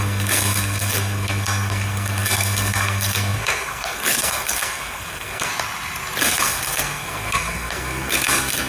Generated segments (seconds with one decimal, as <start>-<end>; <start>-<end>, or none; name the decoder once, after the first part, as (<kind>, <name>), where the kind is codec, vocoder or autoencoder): 0.0-5.5 (codec, SNAC); 6.2-8.7